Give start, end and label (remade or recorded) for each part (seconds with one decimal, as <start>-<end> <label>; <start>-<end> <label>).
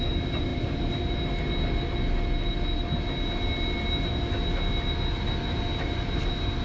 0.0-6.6 recorded